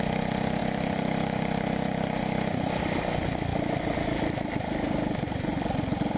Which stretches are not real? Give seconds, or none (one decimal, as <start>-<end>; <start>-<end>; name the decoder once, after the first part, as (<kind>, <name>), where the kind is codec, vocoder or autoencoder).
none